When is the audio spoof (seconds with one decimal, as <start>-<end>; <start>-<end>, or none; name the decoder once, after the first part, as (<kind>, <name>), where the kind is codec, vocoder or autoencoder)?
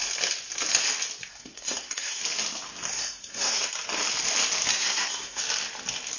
1.3-2.2 (codec, SNAC); 2.9-3.7; 4.7-5.4